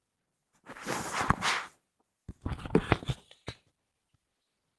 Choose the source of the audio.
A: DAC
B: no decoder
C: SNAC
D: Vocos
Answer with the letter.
B